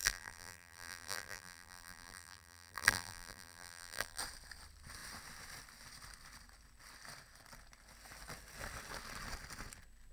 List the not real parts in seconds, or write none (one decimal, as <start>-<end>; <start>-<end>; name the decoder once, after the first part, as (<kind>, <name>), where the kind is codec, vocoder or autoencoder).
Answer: 0.0-4.2 (vocoder, BigVGAN v2)